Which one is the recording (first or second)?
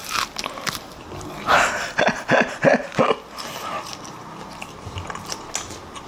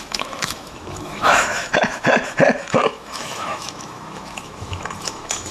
first